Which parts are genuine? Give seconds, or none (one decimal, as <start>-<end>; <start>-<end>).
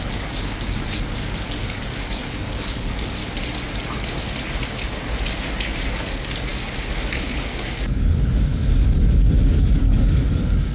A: 3.2-5.9; 6.5-7.2